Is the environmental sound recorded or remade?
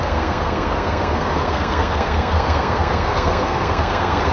remade